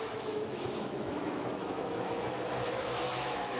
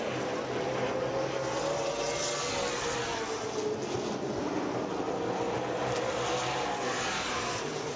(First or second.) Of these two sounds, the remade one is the first